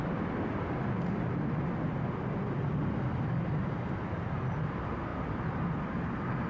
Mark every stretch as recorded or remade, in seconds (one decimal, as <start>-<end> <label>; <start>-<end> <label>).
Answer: 0.0-6.5 recorded